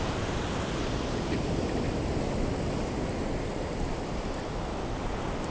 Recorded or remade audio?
recorded